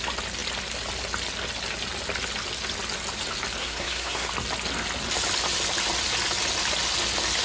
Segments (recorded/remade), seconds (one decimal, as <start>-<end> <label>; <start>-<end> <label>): 0.0-3.6 recorded; 3.6-4.3 remade; 4.3-7.4 recorded